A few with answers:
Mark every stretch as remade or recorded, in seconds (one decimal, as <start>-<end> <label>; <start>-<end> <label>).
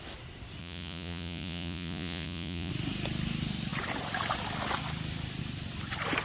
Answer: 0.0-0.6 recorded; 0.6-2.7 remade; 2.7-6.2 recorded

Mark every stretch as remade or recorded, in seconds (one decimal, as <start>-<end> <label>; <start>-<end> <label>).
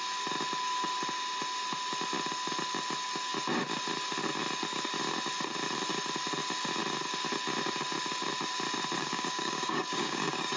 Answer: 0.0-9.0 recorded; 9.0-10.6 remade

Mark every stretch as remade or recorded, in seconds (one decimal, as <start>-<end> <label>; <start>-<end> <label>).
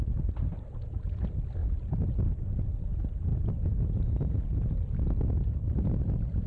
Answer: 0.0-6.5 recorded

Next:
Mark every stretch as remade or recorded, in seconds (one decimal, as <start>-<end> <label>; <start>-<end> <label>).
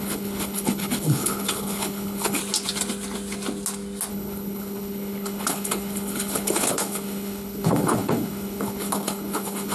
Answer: 0.0-2.4 remade; 2.4-4.1 recorded; 4.1-9.7 remade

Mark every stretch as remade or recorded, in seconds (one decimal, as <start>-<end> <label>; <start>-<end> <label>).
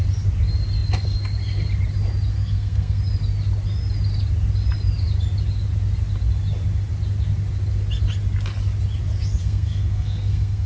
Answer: 0.0-2.3 recorded; 2.3-3.0 remade; 3.0-9.4 recorded; 9.4-10.7 remade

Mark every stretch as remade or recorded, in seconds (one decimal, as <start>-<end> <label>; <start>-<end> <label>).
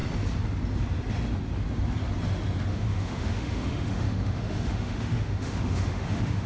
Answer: 0.0-2.7 recorded; 2.7-6.5 remade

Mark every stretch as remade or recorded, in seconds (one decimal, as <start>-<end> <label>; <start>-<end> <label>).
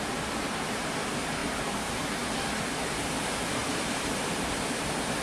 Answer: 0.0-3.6 recorded; 3.6-4.1 remade; 4.1-5.2 recorded